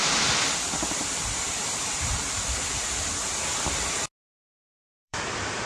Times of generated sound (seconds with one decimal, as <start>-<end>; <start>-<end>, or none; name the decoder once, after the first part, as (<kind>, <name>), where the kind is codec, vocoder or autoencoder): 0.0-3.4 (vocoder, BigVGAN v2); 4.4-5.2